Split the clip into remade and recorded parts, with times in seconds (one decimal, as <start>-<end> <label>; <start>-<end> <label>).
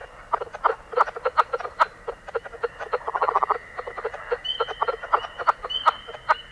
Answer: 0.0-6.5 recorded